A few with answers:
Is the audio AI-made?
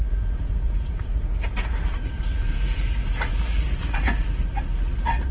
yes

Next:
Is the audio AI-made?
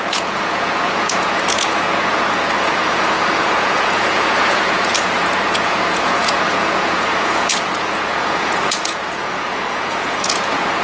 yes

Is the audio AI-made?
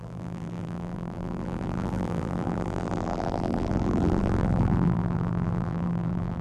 yes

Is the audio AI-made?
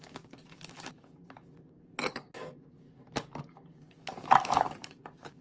yes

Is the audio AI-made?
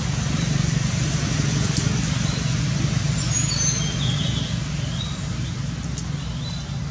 no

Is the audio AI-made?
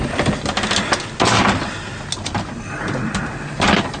no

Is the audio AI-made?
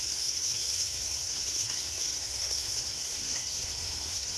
yes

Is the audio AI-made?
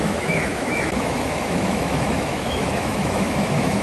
yes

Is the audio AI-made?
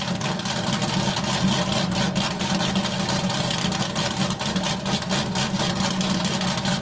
no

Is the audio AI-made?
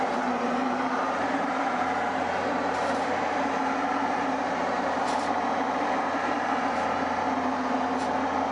yes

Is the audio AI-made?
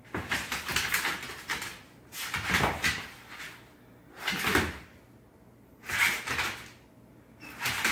no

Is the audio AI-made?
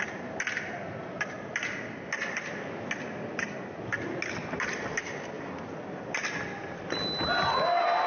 no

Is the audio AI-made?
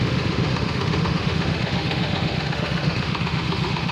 yes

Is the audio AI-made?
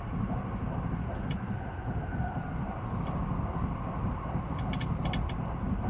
no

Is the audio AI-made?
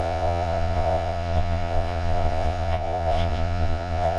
yes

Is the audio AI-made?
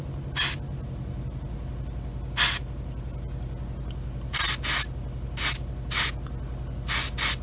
no